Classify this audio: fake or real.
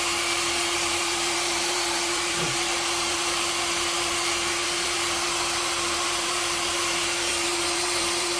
fake